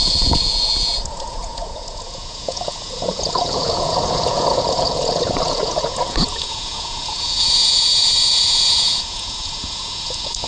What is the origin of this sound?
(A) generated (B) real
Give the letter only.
A